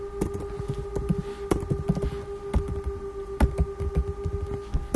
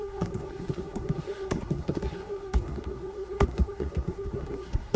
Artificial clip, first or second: second